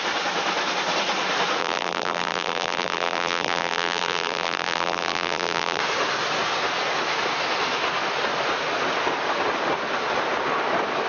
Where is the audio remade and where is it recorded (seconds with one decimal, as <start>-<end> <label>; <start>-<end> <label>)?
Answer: 0.0-1.6 recorded; 1.6-5.8 remade; 5.8-11.1 recorded